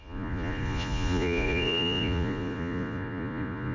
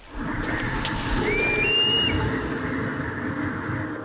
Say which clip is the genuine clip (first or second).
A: second